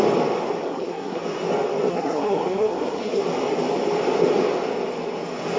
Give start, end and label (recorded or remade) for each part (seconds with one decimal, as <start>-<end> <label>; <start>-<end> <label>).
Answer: 0.0-0.6 recorded; 0.6-1.2 remade; 1.2-1.9 recorded; 1.9-3.2 remade; 3.2-5.6 recorded